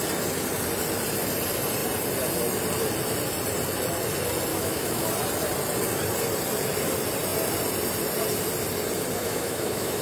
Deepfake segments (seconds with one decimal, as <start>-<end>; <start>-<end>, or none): 4.5-5.1; 9.2-10.0